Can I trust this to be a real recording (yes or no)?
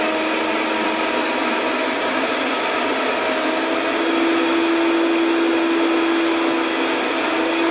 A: yes